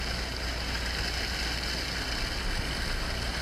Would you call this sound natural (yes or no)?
yes